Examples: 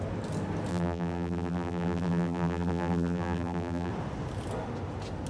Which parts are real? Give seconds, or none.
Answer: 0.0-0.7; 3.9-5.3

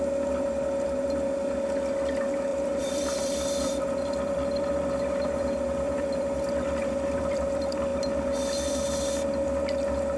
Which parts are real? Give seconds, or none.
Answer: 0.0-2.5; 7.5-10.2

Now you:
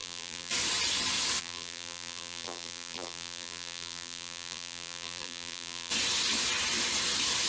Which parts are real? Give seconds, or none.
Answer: 0.5-1.4; 5.9-7.5